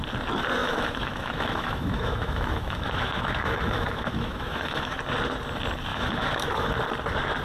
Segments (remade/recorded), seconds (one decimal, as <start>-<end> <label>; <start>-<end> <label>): 0.0-0.6 recorded; 0.6-5.0 remade; 5.0-5.9 recorded; 5.9-6.7 remade; 6.7-7.4 recorded